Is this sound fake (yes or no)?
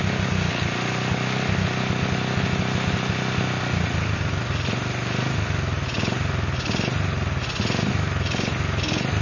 no